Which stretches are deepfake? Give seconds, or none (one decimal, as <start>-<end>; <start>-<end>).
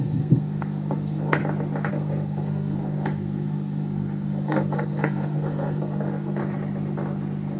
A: 0.0-1.4; 1.9-6.4